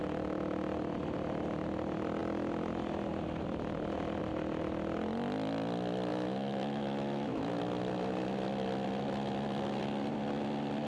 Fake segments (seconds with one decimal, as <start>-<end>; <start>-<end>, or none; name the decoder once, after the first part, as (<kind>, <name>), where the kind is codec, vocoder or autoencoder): 6.1-7.6 (autoencoder, DAC-VAE)